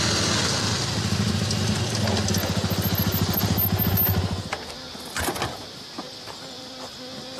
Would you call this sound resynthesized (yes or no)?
no